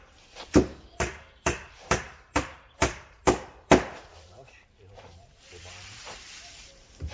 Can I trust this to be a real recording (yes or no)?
no